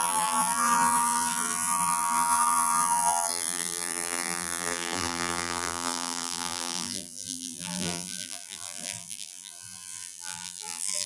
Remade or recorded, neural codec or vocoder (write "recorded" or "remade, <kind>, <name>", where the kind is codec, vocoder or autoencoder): remade, vocoder, BigVGAN v2